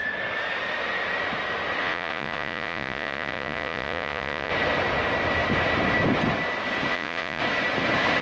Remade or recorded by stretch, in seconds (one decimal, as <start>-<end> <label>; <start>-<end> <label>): 0.0-1.8 recorded; 1.8-4.5 remade; 4.5-6.9 recorded; 6.9-7.4 remade; 7.4-8.2 recorded